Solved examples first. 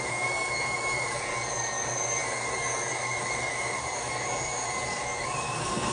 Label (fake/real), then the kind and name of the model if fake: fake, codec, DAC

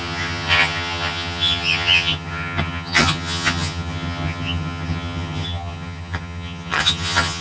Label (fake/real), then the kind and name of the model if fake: fake, vocoder, HiFi-GAN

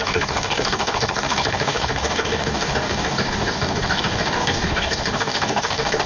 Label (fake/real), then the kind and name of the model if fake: fake, codec, DAC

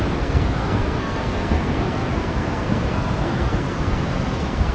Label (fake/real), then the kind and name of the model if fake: fake, codec, SNAC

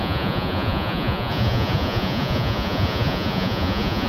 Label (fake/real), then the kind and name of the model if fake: fake, vocoder, Vocos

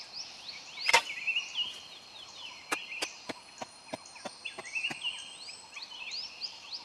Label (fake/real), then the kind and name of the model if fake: real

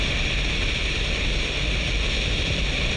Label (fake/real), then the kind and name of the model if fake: real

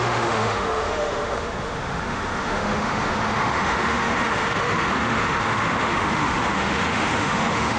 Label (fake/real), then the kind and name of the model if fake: fake, autoencoder, DAC-VAE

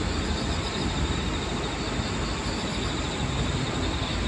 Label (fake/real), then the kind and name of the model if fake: real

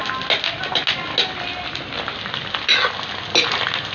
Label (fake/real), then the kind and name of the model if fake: real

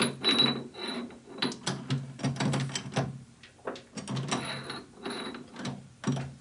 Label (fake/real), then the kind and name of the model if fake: real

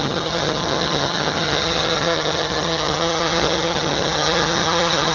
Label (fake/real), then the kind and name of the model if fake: fake, vocoder, HiFi-GAN